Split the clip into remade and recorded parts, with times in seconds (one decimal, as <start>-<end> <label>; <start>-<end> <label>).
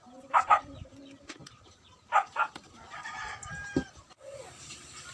0.0-1.4 remade; 1.4-4.0 recorded; 4.0-5.1 remade